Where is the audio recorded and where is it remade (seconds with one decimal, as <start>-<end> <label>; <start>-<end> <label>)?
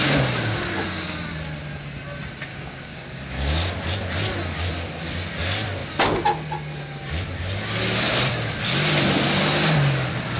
0.0-2.5 recorded; 2.5-3.7 remade; 3.7-10.4 recorded